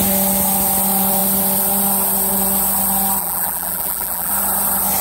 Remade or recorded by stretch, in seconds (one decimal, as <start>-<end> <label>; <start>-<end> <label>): 0.0-3.2 recorded; 3.2-4.3 remade; 4.3-5.0 recorded